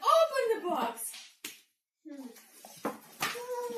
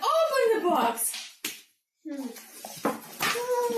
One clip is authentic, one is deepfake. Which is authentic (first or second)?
second